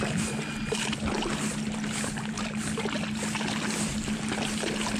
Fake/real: real